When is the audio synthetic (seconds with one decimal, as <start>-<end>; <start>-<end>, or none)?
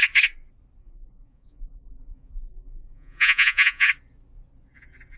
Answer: 0.8-3.9